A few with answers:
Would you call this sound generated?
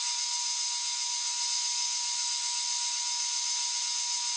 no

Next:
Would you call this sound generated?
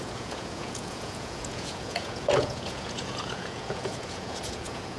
yes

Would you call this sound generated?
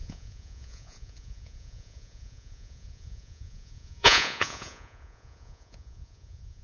yes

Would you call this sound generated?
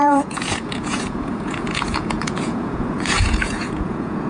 yes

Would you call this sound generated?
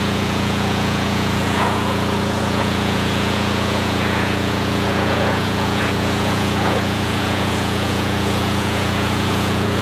yes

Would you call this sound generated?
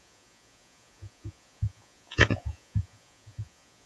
yes